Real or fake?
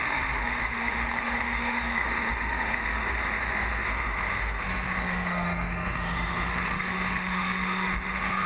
fake